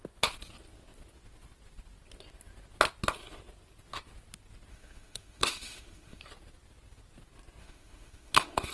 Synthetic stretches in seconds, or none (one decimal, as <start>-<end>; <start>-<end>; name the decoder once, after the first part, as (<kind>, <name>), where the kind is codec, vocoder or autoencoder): 4.7-6.2 (autoencoder, DAC-VAE); 7.6-8.7